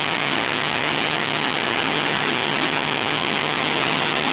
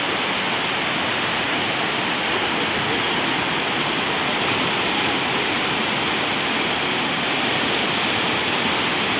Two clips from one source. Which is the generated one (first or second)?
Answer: first